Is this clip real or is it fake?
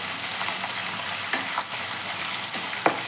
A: real